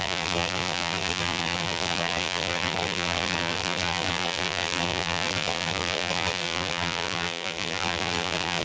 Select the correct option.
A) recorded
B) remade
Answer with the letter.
B